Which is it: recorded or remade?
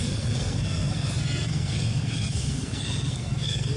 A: remade